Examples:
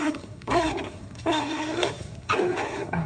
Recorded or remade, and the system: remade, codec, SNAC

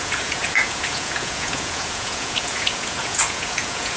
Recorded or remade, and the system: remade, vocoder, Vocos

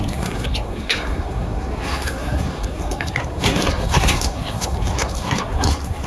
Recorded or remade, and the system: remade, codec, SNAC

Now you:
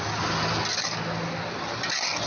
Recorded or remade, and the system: recorded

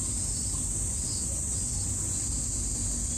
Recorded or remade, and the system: recorded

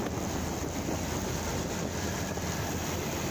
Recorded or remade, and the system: recorded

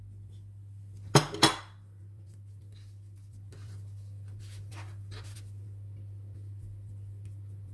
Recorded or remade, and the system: recorded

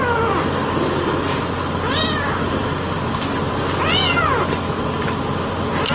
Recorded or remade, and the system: recorded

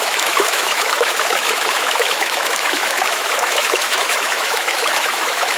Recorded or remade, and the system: remade, autoencoder, DAC-VAE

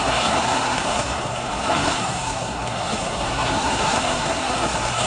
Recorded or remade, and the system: remade, codec, SNAC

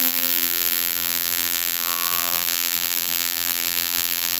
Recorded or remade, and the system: remade, vocoder, BigVGAN v2